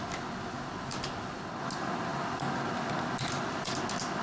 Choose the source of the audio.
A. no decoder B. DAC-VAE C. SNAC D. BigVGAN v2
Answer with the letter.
A